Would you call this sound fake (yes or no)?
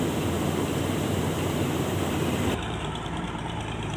yes